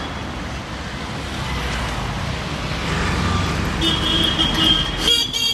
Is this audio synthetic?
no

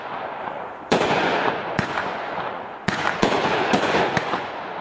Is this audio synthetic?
yes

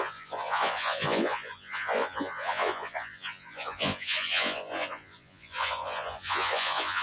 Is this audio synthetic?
yes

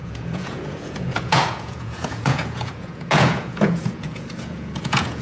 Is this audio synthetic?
yes